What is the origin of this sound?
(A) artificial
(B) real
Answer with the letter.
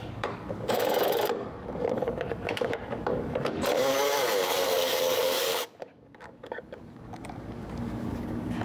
A